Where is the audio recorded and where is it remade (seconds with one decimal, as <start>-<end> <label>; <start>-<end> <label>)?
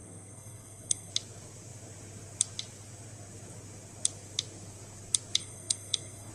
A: 0.0-1.1 remade; 1.1-5.4 recorded; 5.4-6.3 remade